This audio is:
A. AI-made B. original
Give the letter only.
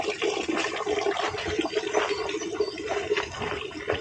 B